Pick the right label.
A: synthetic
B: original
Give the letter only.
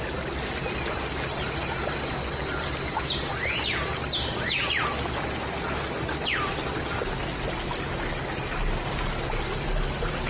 B